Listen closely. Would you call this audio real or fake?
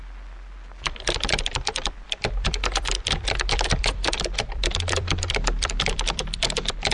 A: fake